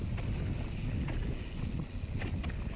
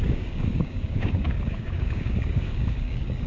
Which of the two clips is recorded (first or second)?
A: first